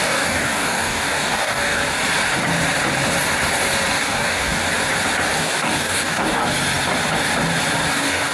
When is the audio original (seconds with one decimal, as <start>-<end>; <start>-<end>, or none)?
1.8-3.9; 4.6-5.4; 6.4-7.9

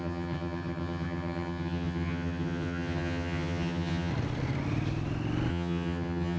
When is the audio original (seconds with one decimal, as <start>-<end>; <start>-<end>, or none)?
4.1-5.5